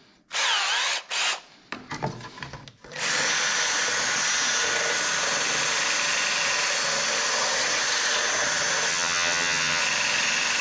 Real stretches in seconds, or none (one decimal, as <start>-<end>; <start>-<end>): 0.0-8.9; 9.8-10.6